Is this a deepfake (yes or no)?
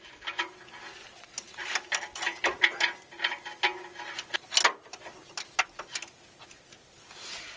no